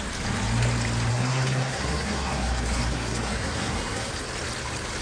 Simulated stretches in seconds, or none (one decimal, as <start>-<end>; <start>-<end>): 1.1-4.1